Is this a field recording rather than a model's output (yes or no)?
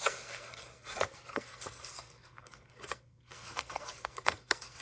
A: no